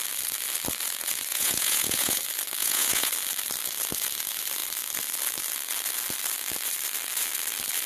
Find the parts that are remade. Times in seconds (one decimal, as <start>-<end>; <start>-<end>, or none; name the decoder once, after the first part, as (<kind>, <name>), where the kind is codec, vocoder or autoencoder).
1.3-2.2 (vocoder, Vocos); 2.6-3.1